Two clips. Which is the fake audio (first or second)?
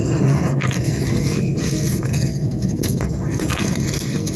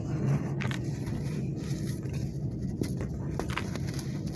first